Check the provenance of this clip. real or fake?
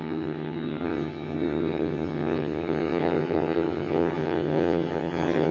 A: fake